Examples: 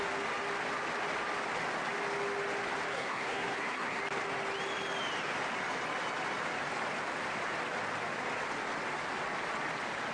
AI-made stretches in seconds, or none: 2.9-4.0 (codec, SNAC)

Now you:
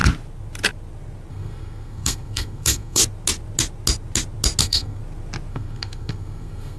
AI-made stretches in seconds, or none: 1.3-3.0 (codec, SNAC); 4.6-5.0; 5.5-6.8

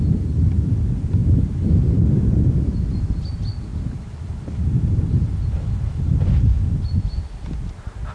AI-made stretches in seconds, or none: none

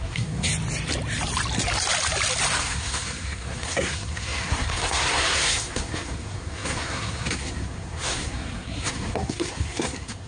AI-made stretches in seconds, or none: 0.0-0.5 (codec, SNAC); 2.6-10.3

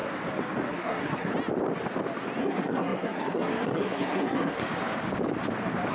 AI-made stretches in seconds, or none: 0.7-1.3 (codec, SNAC); 2.4-4.6